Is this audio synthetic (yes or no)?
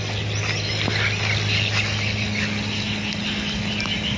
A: no